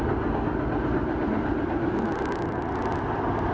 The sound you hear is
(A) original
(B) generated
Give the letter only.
A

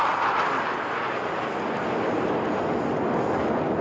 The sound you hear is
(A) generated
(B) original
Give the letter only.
B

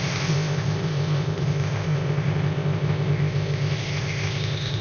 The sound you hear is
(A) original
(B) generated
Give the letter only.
B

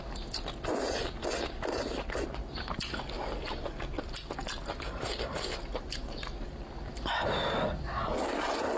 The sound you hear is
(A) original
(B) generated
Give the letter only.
A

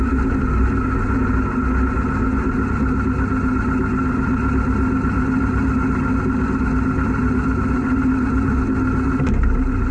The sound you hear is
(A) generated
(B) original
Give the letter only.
B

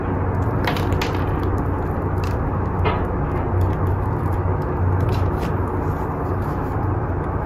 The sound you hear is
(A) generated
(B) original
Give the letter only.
B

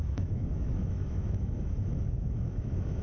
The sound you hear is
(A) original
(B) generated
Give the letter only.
B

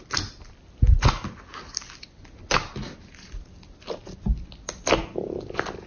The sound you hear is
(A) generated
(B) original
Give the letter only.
B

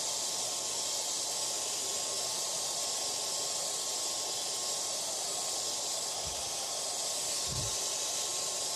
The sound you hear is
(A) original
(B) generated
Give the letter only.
A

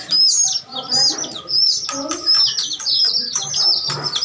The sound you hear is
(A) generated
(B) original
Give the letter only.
B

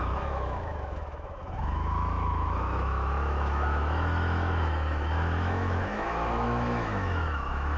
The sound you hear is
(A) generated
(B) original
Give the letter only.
A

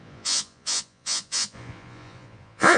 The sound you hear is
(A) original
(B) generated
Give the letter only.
B